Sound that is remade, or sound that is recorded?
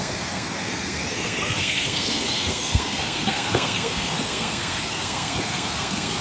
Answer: remade